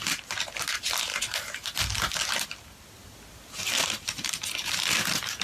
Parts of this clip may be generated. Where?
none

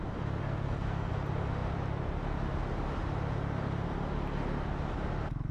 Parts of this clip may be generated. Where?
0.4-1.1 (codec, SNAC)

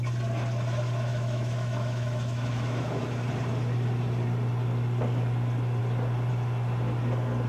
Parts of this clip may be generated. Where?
1.1-3.0 (autoencoder, DAC-VAE)

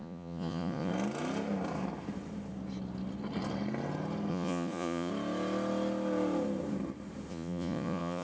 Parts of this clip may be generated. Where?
0.0-0.9 (vocoder, Vocos); 4.3-5.1; 7.3-8.2